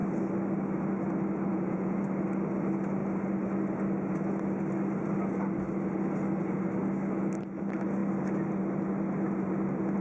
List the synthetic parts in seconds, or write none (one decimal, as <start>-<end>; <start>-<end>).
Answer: 1.5-2.0